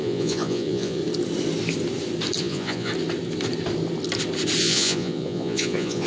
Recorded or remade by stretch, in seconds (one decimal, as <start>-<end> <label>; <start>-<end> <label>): 0.0-1.0 remade; 1.0-2.4 recorded; 2.4-2.9 remade; 2.9-4.6 recorded; 4.6-6.1 remade